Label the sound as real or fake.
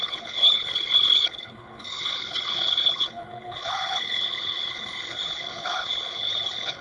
fake